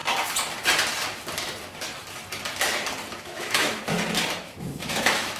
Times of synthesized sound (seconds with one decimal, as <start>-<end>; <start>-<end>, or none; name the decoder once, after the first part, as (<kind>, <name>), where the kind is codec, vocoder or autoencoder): 3.2-3.8 (autoencoder, DAC-VAE); 4.4-5.4